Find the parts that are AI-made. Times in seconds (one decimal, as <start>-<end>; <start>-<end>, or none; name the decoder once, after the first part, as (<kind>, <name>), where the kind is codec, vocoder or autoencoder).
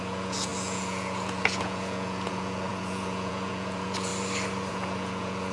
0.0-4.1 (vocoder, Vocos); 4.7-5.5